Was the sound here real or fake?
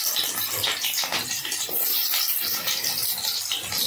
real